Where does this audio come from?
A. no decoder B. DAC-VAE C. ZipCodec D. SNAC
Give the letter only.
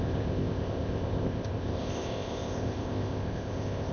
C